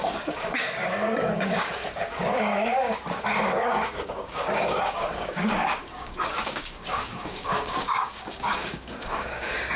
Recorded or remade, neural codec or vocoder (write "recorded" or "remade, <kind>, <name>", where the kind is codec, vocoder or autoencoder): remade, codec, DAC